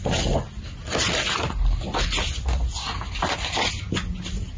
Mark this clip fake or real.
real